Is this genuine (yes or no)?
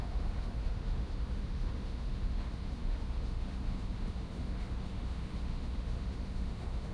no